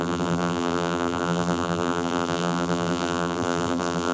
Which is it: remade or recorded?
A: remade